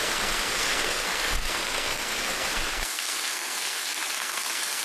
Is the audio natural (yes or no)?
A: no